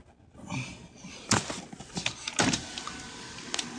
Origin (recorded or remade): recorded